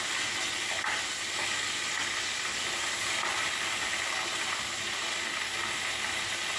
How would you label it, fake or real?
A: real